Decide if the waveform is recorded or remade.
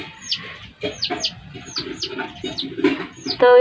recorded